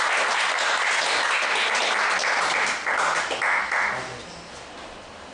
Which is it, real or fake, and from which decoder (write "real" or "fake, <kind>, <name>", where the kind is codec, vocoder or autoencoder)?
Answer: real